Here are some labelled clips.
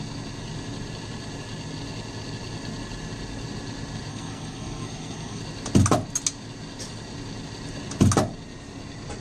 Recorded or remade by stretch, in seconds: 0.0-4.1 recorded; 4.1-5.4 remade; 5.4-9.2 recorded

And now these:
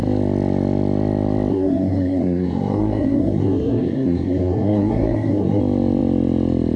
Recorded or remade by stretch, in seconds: 0.0-1.5 recorded; 1.5-5.6 remade; 5.6-6.8 recorded

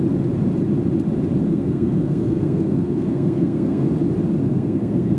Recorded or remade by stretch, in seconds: 0.0-1.5 recorded; 1.5-3.9 remade; 3.9-4.4 recorded; 4.4-5.2 remade

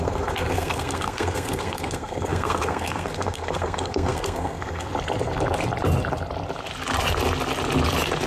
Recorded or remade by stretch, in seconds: 0.0-4.9 remade; 4.9-8.3 recorded

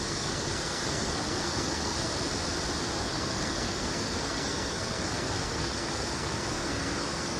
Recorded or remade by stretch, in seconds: 0.0-2.1 remade; 2.1-3.0 recorded; 3.0-7.4 remade